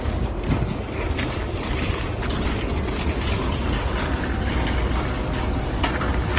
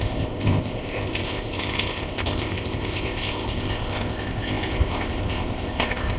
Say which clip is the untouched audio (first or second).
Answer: first